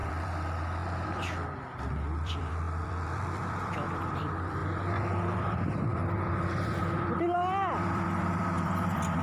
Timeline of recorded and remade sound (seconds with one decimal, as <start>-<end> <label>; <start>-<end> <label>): 0.0-9.2 remade